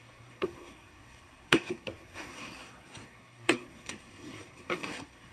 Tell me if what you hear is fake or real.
fake